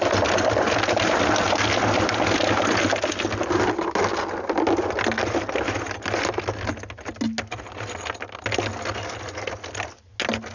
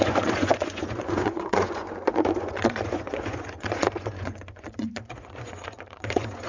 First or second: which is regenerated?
second